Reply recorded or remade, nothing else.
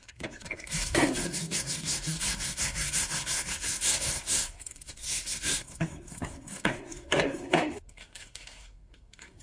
remade